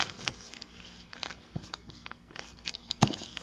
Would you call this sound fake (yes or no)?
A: yes